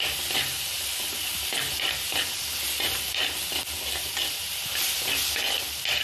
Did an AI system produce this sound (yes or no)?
no